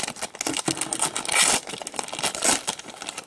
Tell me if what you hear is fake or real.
real